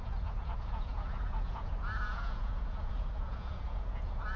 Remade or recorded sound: remade